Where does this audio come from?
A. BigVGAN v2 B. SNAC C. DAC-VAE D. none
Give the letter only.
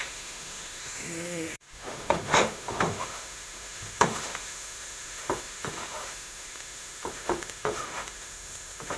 C